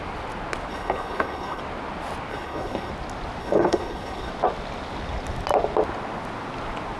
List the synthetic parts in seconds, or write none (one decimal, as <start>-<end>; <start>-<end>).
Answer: 0.7-1.6; 2.3-2.9; 3.4-4.3